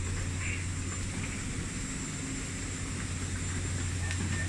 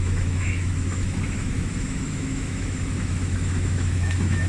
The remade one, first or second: second